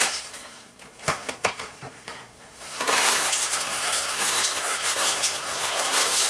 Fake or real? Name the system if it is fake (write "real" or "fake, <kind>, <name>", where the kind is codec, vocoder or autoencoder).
fake, codec, SNAC